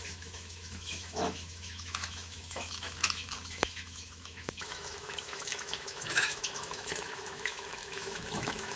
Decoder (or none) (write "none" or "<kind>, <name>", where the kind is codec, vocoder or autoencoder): autoencoder, DAC-VAE